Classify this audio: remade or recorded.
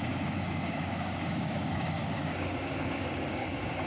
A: remade